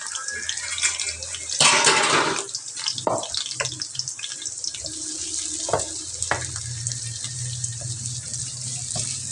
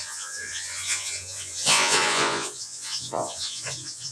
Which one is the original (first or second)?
first